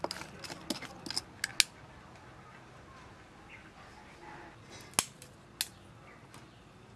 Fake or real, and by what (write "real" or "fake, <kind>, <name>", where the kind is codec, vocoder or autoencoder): real